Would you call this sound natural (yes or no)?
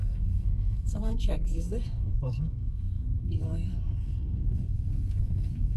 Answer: no